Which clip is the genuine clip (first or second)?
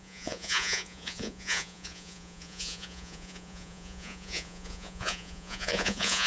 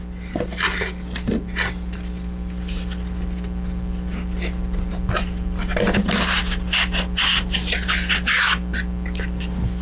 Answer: second